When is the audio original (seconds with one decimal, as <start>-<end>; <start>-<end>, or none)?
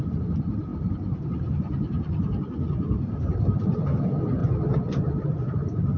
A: 4.4-5.0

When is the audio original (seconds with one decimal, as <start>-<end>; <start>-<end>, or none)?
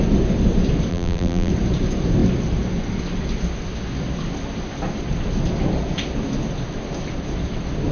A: 0.0-0.9; 1.5-7.9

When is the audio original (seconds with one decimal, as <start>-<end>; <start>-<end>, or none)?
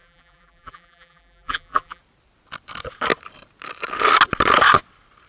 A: 2.0-5.3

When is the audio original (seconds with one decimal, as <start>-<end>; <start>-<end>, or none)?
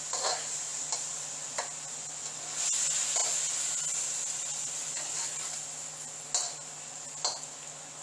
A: 0.0-8.0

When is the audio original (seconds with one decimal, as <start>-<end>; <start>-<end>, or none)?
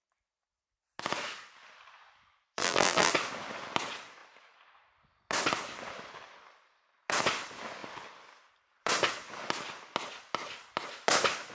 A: 0.0-2.6; 3.1-11.5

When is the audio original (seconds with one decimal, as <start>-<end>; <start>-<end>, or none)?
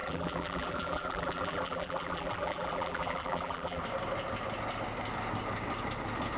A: 3.8-6.4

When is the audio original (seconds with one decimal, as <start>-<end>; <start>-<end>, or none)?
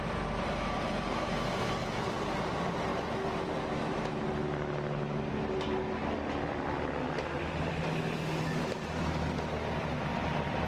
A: 0.0-10.7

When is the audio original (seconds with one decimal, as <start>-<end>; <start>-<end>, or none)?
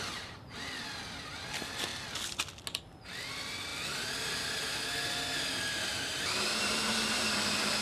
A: 0.0-7.8